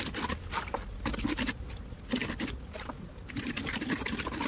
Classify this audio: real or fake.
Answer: fake